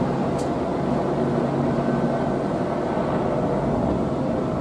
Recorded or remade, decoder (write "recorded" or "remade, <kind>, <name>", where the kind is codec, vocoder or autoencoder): recorded